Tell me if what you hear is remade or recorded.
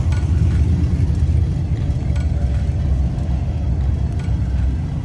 recorded